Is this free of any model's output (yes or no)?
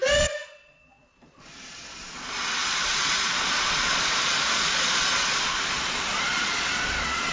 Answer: no